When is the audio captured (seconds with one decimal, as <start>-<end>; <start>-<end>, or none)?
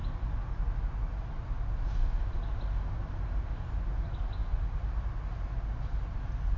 0.0-6.6